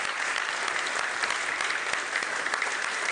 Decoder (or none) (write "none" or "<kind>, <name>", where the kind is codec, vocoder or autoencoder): vocoder, BigVGAN v2